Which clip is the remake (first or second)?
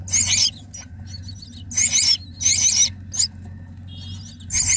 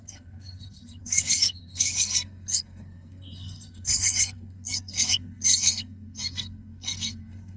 second